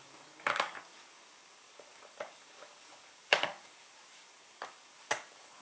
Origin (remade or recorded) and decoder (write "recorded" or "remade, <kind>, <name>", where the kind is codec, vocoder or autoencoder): remade, codec, DAC